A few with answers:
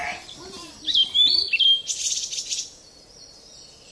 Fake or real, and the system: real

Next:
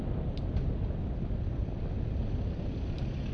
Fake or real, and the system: real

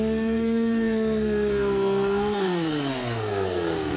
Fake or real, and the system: fake, codec, SNAC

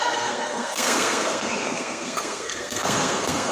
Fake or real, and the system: fake, codec, SNAC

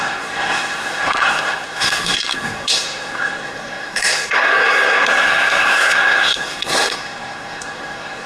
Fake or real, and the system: fake, codec, SNAC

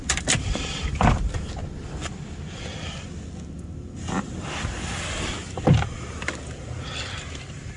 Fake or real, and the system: fake, vocoder, BigVGAN v2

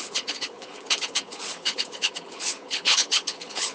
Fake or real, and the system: fake, codec, HILCodec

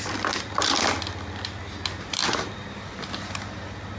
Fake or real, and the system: real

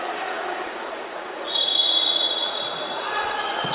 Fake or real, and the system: fake, vocoder, Vocos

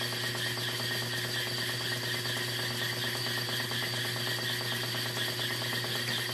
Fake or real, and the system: real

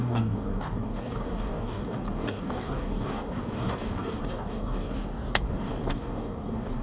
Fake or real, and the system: fake, codec, DAC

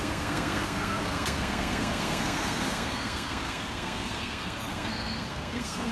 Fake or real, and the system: fake, codec, SNAC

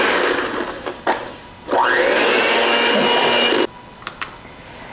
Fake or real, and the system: real